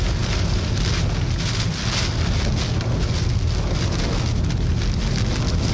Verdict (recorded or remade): recorded